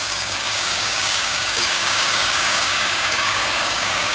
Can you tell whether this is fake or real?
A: fake